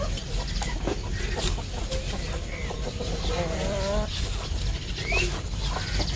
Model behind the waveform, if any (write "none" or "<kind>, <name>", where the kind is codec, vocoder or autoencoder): none